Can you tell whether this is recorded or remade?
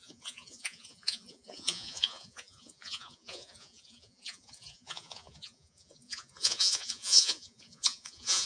remade